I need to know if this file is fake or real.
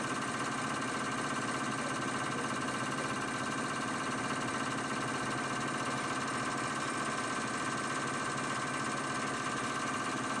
real